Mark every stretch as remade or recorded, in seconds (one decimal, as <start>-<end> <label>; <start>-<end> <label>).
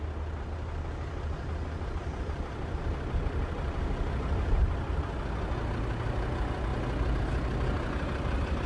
0.0-8.7 recorded